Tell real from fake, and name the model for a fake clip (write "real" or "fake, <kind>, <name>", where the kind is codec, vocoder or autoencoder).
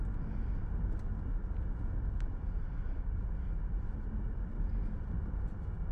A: real